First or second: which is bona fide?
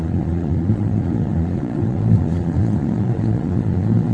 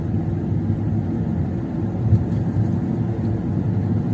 second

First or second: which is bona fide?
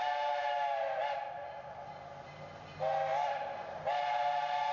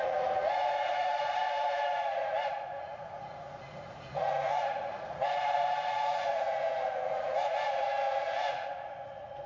first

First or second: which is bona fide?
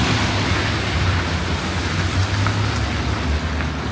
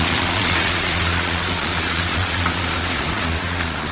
first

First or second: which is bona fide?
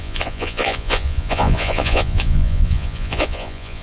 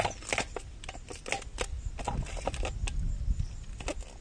second